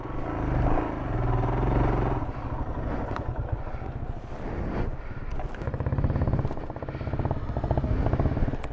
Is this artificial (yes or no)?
no